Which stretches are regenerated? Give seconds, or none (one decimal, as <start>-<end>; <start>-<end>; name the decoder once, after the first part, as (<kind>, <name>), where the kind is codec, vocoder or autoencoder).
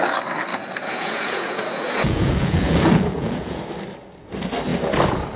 0.5-3.6 (vocoder, Vocos)